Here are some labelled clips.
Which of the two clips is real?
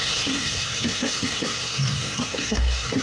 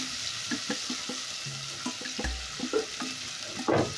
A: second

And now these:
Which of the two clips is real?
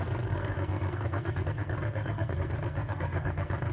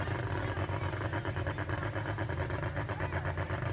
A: second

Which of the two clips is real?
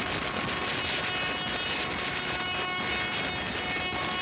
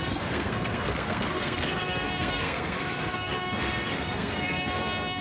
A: first